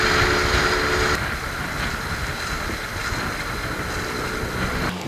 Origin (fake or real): real